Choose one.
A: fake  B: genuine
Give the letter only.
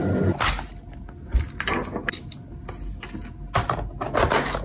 B